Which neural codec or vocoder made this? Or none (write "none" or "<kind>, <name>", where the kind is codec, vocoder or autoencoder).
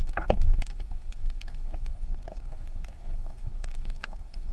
codec, DAC